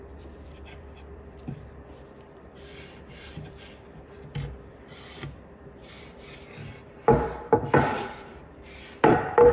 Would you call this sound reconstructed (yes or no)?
yes